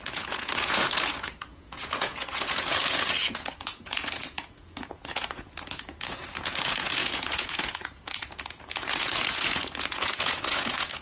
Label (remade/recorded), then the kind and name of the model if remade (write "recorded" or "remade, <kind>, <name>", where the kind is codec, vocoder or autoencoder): remade, vocoder, Vocos